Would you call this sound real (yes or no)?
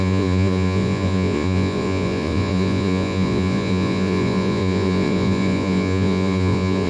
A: no